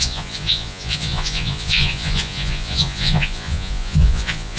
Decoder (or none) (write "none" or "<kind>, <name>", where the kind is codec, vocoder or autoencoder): vocoder, Vocos